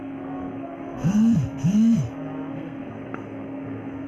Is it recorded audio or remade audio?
remade